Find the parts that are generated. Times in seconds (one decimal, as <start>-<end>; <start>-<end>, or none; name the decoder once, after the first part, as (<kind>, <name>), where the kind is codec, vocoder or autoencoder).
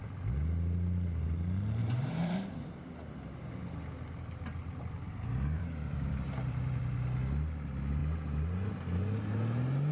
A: 1.8-2.5 (vocoder, BigVGAN v2); 4.6-6.8